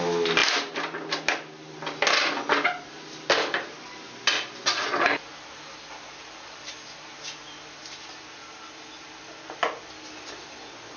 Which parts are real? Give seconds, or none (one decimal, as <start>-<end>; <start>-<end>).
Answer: 0.0-11.0